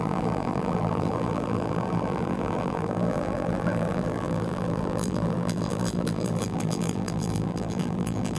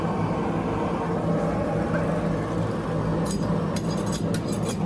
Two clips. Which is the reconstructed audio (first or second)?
first